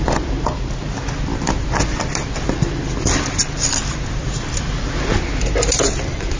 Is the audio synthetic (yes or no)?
no